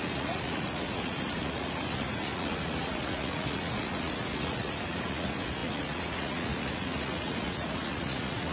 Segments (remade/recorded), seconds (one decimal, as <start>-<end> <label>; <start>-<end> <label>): 0.0-8.5 remade